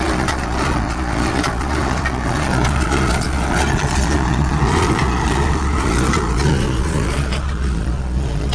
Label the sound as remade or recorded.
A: remade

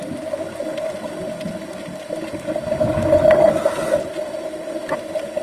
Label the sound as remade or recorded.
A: recorded